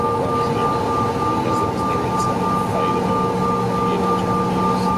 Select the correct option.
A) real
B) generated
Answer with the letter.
A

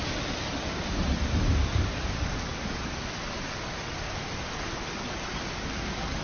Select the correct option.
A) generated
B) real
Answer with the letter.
B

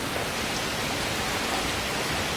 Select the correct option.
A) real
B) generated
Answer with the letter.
A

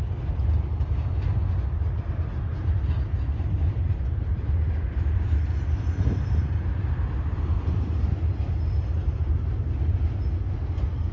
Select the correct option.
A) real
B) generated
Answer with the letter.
A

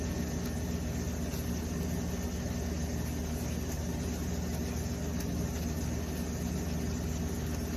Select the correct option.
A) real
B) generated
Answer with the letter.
A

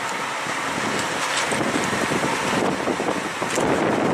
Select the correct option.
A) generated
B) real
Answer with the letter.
B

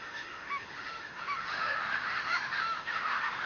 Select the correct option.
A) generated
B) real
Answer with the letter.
A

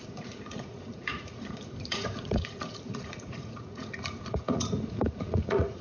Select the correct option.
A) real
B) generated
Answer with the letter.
B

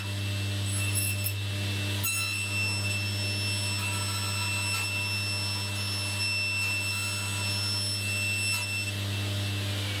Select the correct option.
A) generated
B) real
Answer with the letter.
B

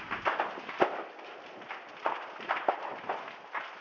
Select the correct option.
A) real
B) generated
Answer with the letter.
A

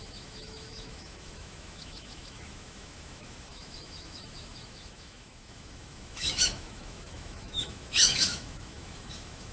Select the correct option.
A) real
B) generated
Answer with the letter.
B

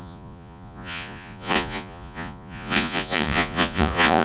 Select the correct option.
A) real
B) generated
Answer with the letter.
B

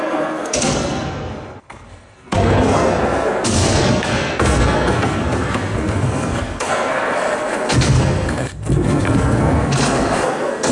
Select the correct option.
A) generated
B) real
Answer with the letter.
A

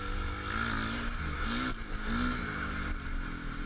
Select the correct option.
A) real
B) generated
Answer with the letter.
A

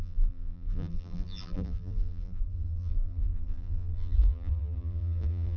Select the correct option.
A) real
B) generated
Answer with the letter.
B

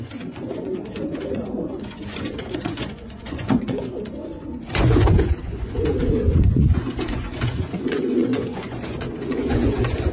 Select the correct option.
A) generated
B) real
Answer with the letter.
A